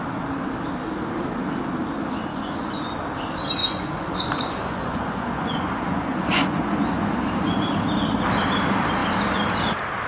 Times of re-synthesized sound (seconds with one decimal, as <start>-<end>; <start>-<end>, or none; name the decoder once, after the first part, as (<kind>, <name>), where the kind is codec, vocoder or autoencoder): 2.3-2.8 (vocoder, Vocos); 3.6-7.2